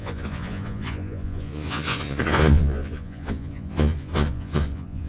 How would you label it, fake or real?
fake